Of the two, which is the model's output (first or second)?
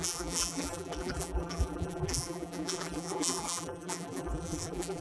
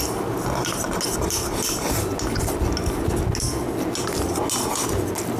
first